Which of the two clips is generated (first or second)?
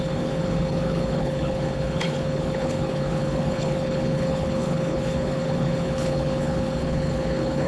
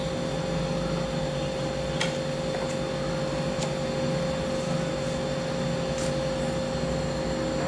first